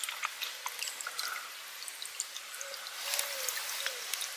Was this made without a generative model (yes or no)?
yes